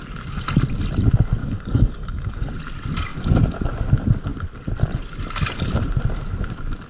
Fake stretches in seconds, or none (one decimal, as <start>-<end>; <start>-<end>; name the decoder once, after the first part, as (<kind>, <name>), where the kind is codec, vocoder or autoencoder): 1.4-2.5 (codec, DAC)